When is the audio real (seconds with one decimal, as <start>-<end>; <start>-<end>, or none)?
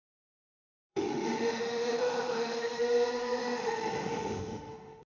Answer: 0.0-0.9; 2.8-3.4